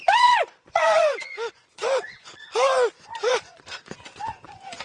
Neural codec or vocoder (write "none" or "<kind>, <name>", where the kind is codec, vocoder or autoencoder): vocoder, Vocos